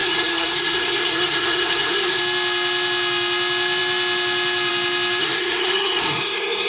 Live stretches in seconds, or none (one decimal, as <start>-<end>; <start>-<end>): 2.2-5.2